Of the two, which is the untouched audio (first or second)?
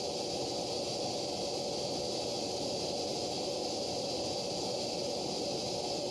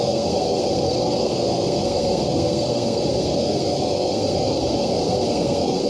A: first